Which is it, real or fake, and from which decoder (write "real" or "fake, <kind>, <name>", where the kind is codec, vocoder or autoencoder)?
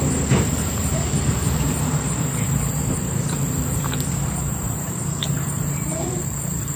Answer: fake, vocoder, BigVGAN v2